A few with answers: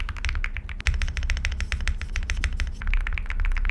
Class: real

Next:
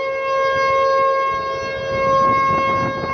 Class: real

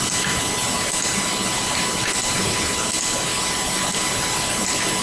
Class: real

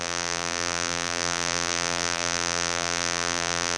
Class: fake